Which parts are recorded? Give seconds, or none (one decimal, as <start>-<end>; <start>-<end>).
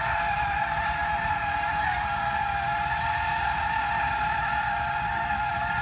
0.0-5.8